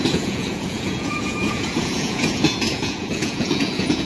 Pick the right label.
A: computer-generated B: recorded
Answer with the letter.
A